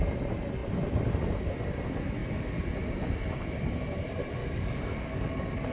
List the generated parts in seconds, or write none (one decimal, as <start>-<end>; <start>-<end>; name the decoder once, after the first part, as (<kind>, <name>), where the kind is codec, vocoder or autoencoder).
4.4-5.7 (codec, DAC)